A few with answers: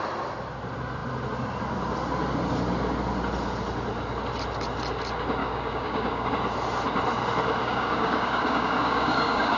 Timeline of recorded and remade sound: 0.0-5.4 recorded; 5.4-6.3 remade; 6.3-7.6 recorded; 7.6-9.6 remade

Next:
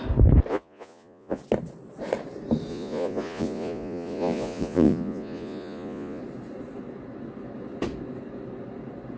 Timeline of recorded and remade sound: 0.0-0.5 recorded; 0.5-1.4 remade; 1.4-2.7 recorded; 2.7-6.2 remade; 6.2-9.2 recorded

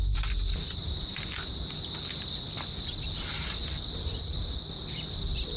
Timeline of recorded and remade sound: 0.0-5.6 recorded

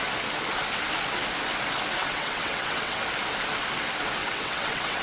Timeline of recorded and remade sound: 0.0-2.0 recorded; 2.0-3.0 remade; 3.0-4.2 recorded; 4.2-5.0 remade

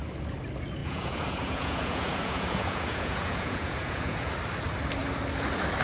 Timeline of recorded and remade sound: 0.0-0.8 recorded; 0.8-4.3 remade; 4.3-5.8 recorded

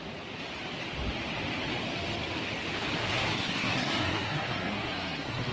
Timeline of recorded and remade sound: 0.0-3.0 recorded; 3.0-5.5 remade